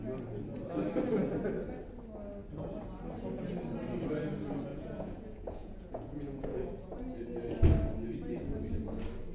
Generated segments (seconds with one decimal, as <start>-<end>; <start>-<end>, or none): 4.7-7.0